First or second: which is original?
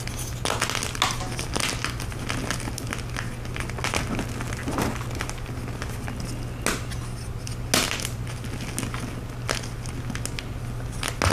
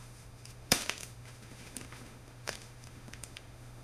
first